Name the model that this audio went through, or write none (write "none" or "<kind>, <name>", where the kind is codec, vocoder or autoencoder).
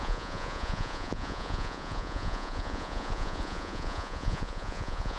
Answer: vocoder, Vocos